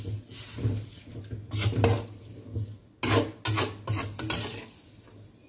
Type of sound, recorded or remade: recorded